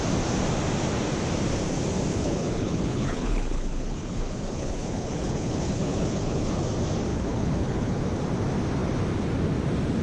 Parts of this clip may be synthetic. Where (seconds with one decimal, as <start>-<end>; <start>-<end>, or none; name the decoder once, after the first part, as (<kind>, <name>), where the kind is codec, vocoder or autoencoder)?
2.1-6.6 (codec, HILCodec); 7.1-8.0